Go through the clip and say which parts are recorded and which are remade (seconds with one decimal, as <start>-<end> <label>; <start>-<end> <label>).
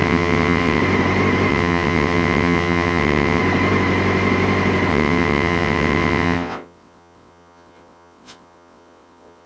0.0-0.8 remade; 0.8-1.5 recorded; 1.5-3.4 remade; 3.4-4.9 recorded; 4.9-9.5 remade